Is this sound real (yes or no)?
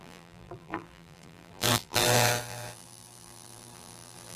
no